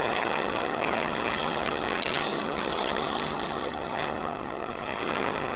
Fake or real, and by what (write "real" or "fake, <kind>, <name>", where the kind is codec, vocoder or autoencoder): fake, vocoder, HiFi-GAN